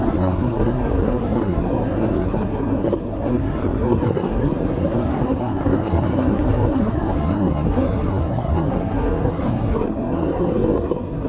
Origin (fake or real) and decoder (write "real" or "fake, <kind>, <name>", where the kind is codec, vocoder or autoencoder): fake, codec, SNAC